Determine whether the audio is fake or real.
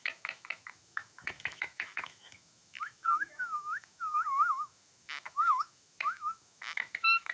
fake